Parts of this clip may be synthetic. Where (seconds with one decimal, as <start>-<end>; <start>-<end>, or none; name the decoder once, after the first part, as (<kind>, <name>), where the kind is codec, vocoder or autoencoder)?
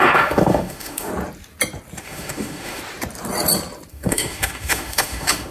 0.0-1.1 (autoencoder, DAC-VAE); 2.0-2.8; 3.9-5.5